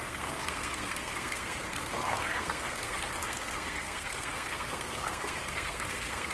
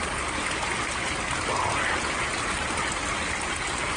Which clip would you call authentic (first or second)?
second